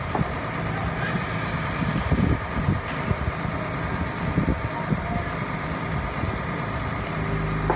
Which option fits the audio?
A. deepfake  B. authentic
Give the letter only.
B